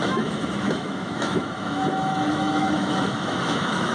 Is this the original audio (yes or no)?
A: no